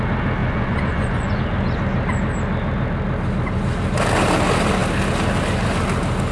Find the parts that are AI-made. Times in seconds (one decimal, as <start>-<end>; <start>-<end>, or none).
0.4-1.4